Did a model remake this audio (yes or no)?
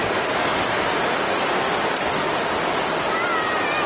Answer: no